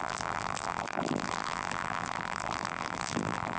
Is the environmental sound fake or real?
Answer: fake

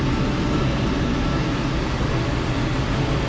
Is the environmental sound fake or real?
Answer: real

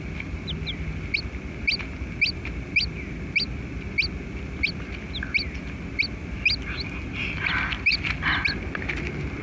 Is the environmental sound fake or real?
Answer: real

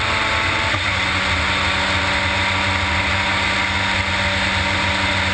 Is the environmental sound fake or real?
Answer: real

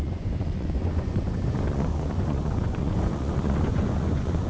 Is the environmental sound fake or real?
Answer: fake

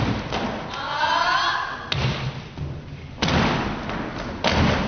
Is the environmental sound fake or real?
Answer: real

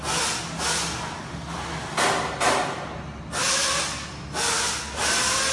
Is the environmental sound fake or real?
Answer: real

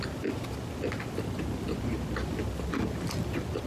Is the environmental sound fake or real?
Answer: real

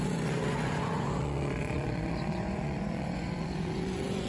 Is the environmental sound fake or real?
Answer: fake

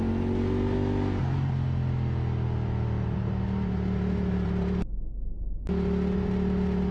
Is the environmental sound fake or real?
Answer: real